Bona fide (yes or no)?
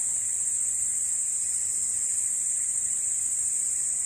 yes